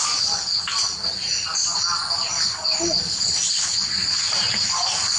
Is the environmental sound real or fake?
real